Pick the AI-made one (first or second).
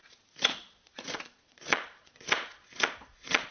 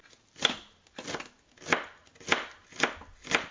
first